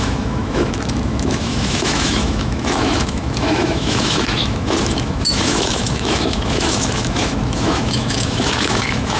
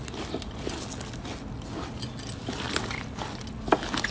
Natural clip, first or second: second